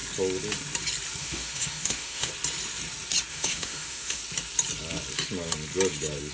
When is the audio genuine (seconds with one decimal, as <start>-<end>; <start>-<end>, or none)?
0.0-1.2; 2.3-3.3; 4.2-6.3